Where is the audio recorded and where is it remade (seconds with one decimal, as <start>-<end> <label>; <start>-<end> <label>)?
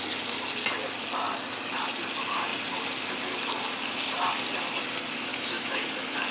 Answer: 0.0-5.3 recorded; 5.3-5.8 remade; 5.8-6.3 recorded